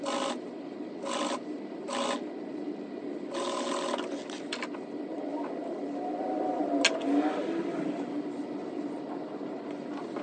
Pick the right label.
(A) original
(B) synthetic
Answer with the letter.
A